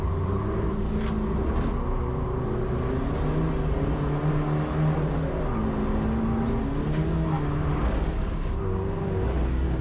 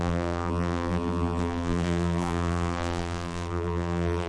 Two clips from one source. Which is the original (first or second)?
first